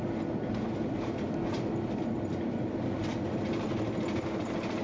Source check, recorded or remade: recorded